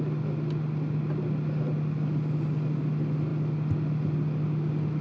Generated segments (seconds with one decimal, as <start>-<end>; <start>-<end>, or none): none